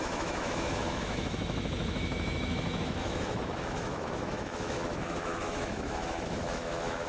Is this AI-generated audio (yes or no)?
yes